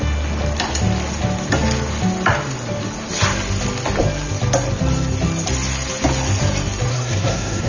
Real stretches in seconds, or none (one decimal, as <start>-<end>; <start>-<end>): 0.0-6.9